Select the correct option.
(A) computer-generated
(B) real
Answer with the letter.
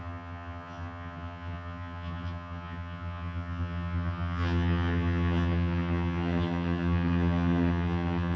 A